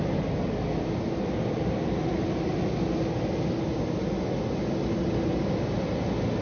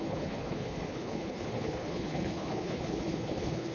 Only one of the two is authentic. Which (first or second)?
first